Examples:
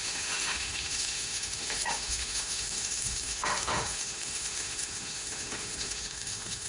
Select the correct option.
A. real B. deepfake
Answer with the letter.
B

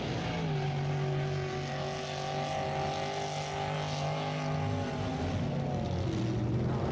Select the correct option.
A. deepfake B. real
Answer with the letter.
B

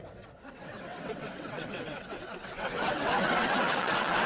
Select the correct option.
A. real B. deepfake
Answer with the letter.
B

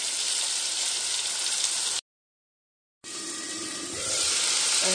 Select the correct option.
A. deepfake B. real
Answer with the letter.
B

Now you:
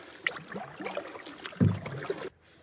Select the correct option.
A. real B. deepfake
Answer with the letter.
A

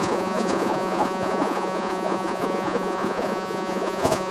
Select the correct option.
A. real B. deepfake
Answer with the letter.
B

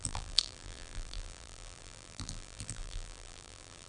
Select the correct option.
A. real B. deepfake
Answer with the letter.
B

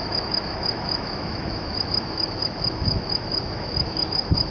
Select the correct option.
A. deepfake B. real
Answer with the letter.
A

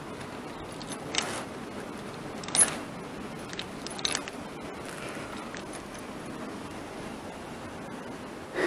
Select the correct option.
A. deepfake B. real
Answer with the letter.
B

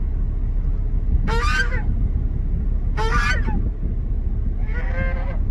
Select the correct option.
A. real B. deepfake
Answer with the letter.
A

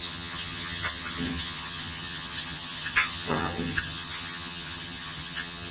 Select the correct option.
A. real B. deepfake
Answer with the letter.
B